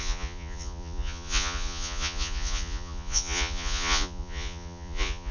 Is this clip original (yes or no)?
no